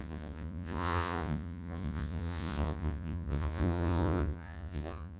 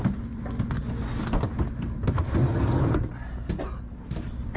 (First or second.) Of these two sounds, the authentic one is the second